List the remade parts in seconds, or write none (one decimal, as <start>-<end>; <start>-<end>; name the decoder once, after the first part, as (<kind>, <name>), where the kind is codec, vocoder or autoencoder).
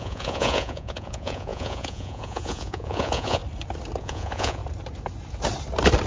0.0-3.4 (vocoder, Vocos); 4.0-4.6